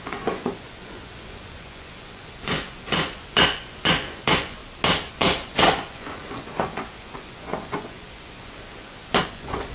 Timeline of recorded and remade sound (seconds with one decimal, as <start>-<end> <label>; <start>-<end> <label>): 0.0-4.6 remade; 4.6-5.1 recorded; 5.1-9.7 remade